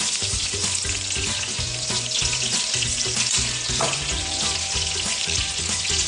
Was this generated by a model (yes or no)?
yes